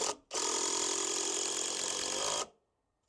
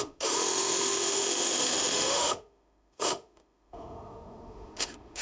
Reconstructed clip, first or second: second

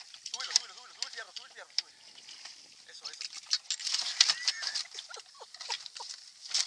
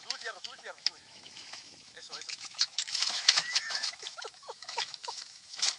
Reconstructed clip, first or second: second